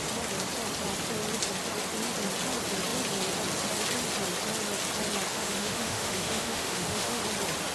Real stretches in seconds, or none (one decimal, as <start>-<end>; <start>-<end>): 0.0-5.3; 7.2-7.7